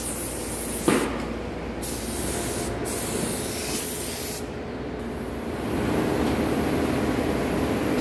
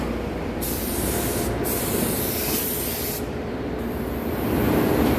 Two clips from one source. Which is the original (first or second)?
first